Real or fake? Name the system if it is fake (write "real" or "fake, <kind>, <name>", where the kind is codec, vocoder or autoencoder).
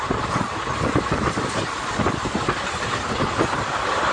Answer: real